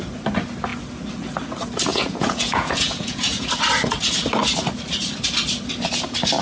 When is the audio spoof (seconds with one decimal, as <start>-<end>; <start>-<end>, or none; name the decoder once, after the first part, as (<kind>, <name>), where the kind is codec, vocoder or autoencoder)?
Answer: 1.9-3.5 (vocoder, Vocos)